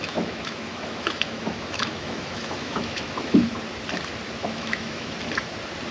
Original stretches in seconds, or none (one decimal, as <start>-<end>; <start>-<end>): 3.5-4.4; 5.1-5.9